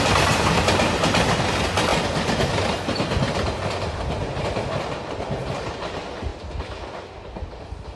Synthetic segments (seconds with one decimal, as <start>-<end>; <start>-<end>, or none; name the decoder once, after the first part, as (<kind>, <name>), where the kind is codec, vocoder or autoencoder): none